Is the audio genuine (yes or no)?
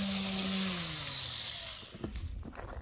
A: yes